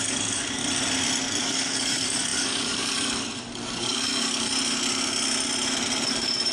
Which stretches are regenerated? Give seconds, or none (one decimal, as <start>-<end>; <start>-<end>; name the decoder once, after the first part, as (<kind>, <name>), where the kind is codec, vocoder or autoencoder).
0.0-0.6 (codec, DAC); 1.4-4.5; 6.0-6.5